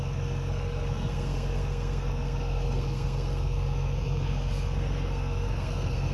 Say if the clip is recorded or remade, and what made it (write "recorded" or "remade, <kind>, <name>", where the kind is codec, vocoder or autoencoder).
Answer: remade, codec, SNAC